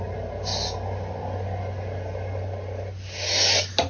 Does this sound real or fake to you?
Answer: real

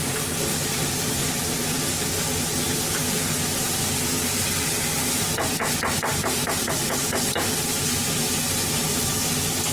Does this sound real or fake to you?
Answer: real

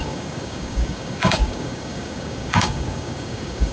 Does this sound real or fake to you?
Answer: fake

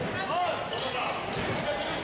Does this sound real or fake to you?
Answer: real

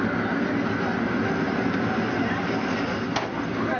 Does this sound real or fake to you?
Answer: real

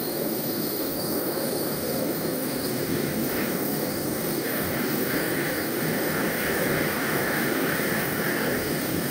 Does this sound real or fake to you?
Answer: fake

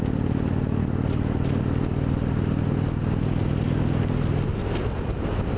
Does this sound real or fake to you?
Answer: real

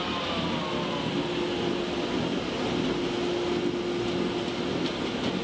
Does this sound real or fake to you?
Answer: real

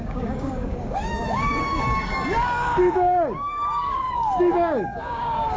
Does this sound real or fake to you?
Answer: fake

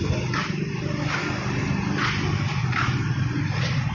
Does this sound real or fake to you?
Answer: real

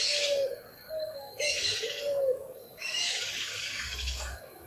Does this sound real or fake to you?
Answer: fake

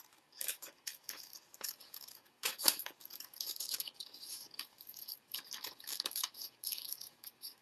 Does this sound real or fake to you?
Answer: fake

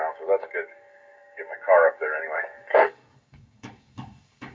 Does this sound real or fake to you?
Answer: fake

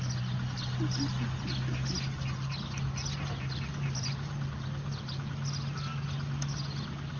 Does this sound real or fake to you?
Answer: real